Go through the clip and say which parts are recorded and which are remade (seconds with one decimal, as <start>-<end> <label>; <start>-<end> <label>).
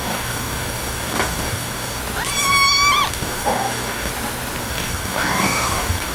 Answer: 0.0-2.0 remade; 2.0-3.1 recorded; 3.1-4.1 remade; 4.1-4.6 recorded; 4.6-6.1 remade